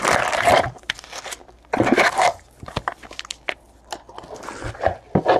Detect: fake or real real